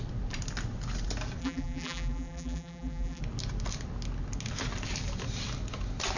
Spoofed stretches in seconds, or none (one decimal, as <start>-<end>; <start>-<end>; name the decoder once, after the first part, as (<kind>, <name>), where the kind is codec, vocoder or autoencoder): 1.4-3.2 (vocoder, BigVGAN v2)